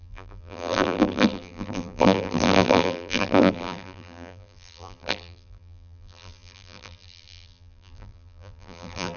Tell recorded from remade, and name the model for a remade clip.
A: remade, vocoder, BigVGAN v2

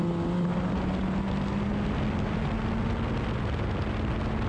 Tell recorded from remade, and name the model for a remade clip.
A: recorded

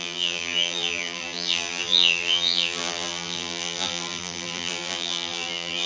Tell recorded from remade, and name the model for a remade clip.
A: remade, vocoder, BigVGAN v2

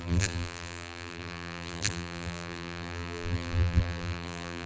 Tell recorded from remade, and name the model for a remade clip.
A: remade, vocoder, BigVGAN v2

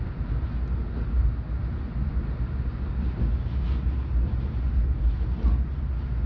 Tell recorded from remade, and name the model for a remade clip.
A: recorded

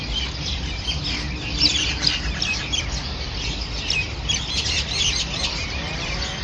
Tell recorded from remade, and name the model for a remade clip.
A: remade, vocoder, BigVGAN v2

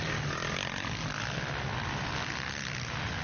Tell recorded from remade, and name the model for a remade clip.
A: recorded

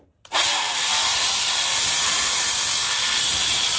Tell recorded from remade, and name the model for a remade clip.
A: remade, vocoder, BigVGAN v2